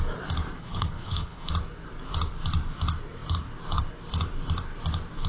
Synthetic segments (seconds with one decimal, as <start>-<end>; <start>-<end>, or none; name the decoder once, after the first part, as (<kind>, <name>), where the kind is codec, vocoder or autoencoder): 0.6-1.5 (codec, HILCodec)